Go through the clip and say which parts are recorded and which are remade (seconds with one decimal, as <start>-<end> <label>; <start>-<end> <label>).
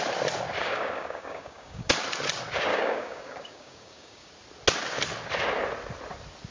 0.0-0.6 recorded; 0.6-1.9 remade; 1.9-2.7 recorded; 2.7-4.3 remade; 4.3-6.5 recorded